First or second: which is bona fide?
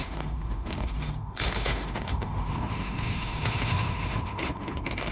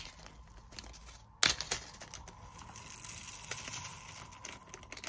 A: second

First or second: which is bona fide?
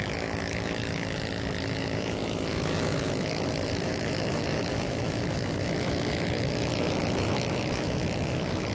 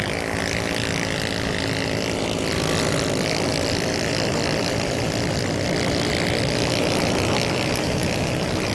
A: second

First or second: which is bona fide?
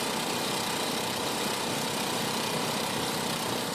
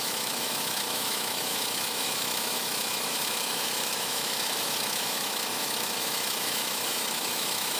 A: first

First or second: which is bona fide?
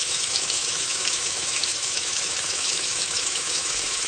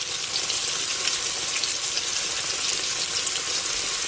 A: second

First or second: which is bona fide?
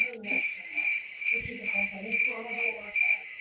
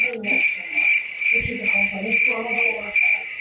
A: second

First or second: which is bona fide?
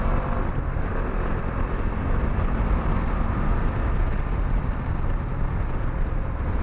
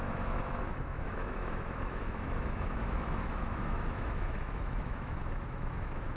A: first